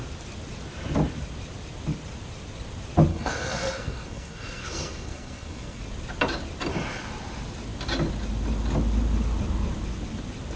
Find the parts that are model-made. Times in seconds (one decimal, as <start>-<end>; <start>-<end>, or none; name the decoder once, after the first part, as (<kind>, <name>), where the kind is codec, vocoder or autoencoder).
3.1-5.8 (codec, SNAC)